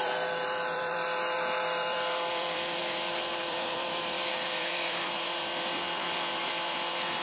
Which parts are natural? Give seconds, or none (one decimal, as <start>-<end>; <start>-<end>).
2.8-3.4; 6.4-7.2